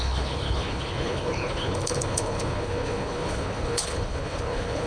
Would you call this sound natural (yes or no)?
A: no